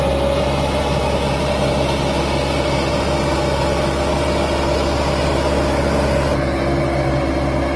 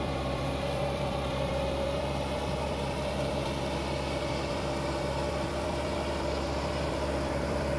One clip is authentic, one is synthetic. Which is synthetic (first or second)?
second